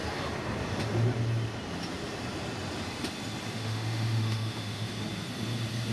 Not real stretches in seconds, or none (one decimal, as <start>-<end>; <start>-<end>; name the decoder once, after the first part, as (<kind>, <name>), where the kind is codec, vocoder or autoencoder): 3.5-4.9 (autoencoder, DAC-VAE)